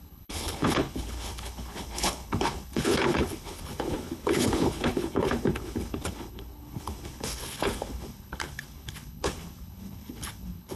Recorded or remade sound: remade